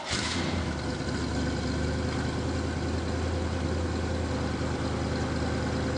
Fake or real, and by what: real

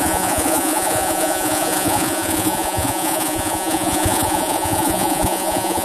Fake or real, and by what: fake, vocoder, Vocos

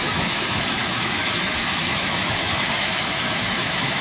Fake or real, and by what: fake, autoencoder, DAC-VAE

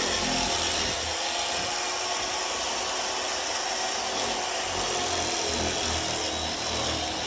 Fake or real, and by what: real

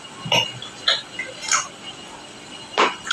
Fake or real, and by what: real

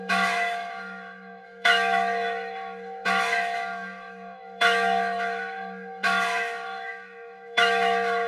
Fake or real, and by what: fake, autoencoder, DAC-VAE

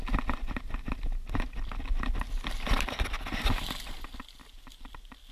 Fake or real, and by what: real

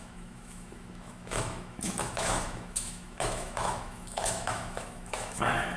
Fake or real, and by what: fake, autoencoder, DAC-VAE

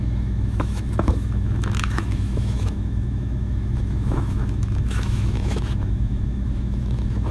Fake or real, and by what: fake, autoencoder, DAC-VAE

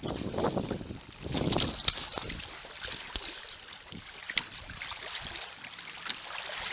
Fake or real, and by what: fake, vocoder, BigVGAN v2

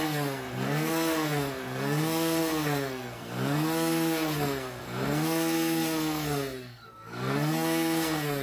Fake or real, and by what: fake, codec, SNAC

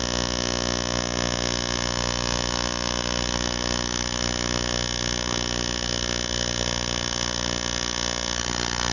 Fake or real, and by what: real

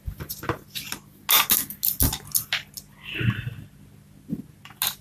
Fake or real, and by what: real